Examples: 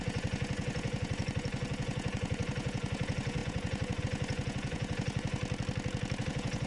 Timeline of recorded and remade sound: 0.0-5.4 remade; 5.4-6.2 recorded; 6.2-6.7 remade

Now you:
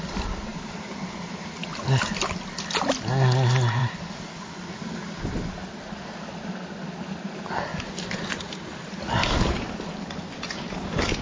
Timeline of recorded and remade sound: 0.0-0.5 recorded; 0.5-1.5 remade; 1.5-11.2 recorded

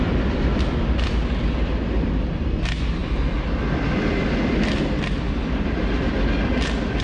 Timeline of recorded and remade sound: 0.0-7.0 recorded

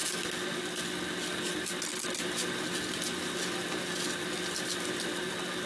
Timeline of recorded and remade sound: 0.0-5.7 recorded